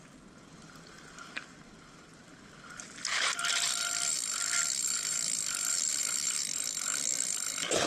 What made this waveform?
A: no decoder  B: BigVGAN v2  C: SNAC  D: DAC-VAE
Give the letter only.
A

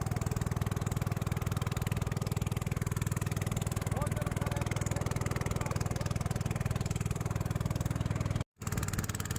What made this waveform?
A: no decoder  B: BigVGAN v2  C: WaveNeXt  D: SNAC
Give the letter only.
A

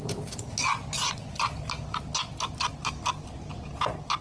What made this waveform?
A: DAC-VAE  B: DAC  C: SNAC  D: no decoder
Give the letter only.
D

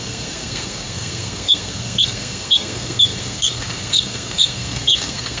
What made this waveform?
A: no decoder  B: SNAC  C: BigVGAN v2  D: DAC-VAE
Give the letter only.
B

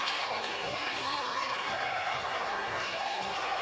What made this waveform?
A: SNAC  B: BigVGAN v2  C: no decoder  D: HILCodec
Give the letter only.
A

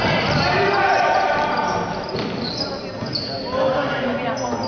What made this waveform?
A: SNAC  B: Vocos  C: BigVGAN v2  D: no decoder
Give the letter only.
D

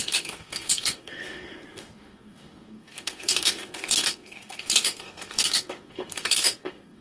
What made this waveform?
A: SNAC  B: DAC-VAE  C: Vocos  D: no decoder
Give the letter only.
A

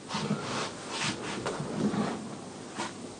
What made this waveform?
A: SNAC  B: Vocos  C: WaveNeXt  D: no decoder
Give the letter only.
D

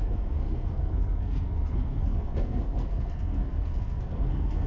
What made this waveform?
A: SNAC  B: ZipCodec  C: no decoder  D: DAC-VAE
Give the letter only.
A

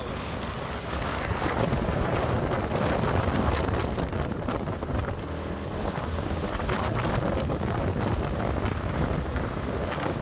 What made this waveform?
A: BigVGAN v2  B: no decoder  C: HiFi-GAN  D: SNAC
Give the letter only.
B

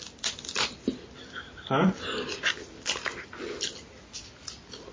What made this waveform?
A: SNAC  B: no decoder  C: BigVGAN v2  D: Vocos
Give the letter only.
B